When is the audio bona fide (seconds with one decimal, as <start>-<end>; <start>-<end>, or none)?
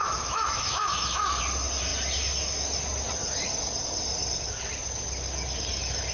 1.4-6.1